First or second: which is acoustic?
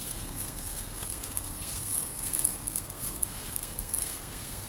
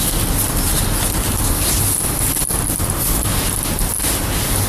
second